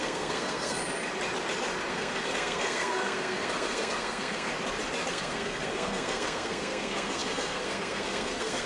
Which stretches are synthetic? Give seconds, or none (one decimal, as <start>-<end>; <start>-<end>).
0.0-0.8; 1.9-4.5; 5.1-8.7